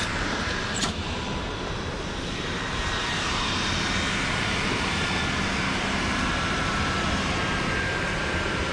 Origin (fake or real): fake